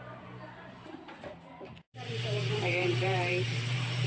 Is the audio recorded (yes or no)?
no